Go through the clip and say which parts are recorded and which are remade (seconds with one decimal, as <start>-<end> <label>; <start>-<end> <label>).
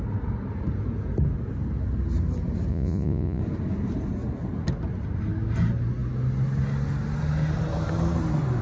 0.0-2.7 recorded; 2.7-3.4 remade; 3.4-8.6 recorded